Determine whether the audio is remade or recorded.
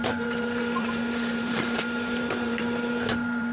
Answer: remade